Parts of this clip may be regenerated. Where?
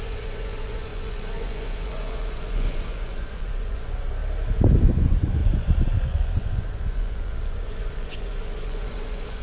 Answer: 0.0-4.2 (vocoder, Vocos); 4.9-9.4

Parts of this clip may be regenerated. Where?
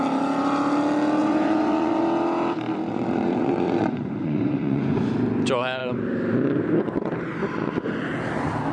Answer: 1.2-2.0 (vocoder, Vocos); 2.9-5.0